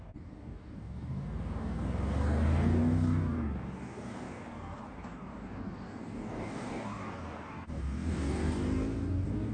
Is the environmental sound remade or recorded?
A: remade